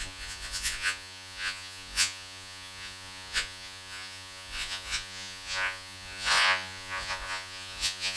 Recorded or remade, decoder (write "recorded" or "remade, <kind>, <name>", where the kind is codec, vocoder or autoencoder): remade, vocoder, Vocos